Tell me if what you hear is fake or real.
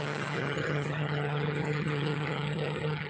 fake